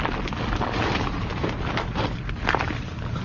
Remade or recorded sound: recorded